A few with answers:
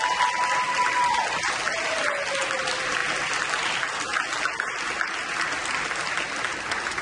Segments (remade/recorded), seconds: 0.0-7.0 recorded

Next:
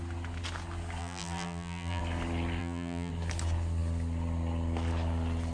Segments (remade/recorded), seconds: 0.0-1.0 recorded; 1.0-2.0 remade; 2.0-2.6 recorded; 2.6-3.1 remade; 3.1-5.5 recorded